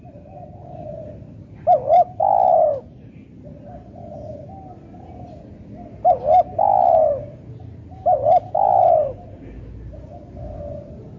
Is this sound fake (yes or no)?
no